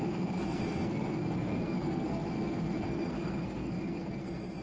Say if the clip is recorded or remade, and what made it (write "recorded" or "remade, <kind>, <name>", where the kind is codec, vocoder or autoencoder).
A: remade, codec, SNAC